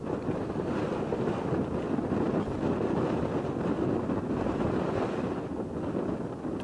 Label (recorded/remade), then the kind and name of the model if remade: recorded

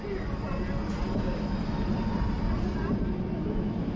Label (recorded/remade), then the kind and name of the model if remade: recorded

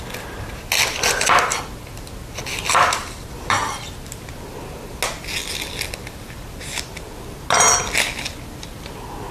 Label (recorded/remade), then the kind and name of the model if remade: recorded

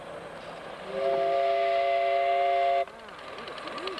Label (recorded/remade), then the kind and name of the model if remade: recorded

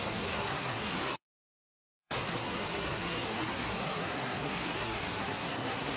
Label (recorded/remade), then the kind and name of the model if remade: remade, codec, SNAC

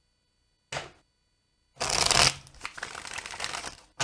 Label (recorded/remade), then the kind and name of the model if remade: recorded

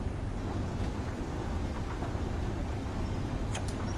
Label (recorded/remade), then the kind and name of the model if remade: recorded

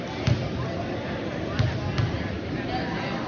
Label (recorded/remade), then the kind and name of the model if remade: recorded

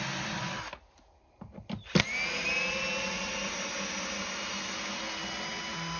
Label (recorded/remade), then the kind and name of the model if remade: recorded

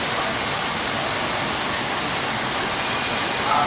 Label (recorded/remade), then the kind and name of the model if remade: recorded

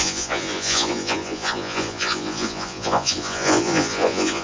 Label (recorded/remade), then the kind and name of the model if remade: remade, vocoder, Vocos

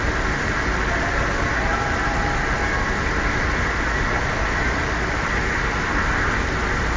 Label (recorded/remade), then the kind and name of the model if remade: recorded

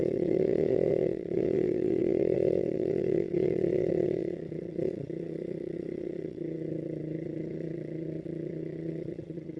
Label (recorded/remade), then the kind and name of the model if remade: remade, vocoder, WaveNeXt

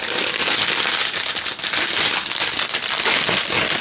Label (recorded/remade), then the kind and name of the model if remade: recorded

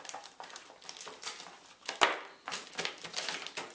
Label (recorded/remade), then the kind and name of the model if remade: recorded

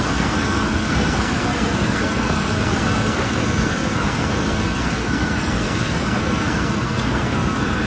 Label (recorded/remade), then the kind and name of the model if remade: remade, codec, SNAC